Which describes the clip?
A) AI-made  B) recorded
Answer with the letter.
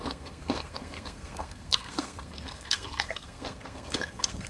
A